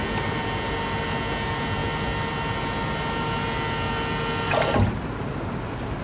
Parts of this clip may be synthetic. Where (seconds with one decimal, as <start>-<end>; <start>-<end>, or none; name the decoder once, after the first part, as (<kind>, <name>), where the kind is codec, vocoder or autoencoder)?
none